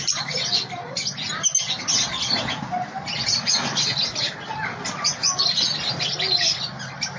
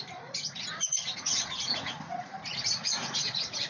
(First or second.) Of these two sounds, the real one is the first